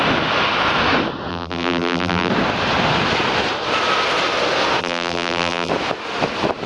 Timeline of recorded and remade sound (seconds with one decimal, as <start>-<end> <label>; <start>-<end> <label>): 0.0-1.3 recorded; 1.3-2.3 remade; 2.3-4.8 recorded; 4.8-5.7 remade; 5.7-6.7 recorded